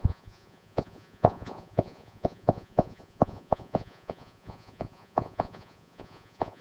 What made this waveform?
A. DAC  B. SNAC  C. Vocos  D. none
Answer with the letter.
C